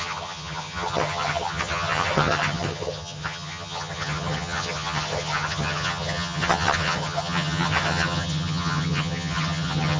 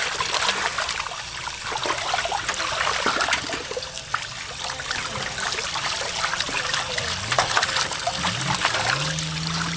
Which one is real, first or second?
second